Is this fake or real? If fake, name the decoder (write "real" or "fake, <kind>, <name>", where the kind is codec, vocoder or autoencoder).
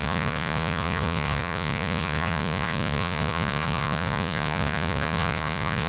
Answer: fake, vocoder, Vocos